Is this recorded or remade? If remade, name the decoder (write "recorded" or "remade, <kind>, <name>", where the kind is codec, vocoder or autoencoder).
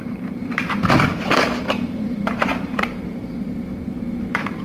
remade, vocoder, BigVGAN v2